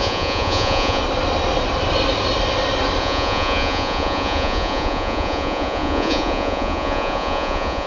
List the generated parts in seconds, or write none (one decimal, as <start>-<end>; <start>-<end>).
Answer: 0.0-1.0; 3.0-7.9